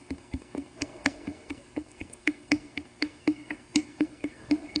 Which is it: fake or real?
fake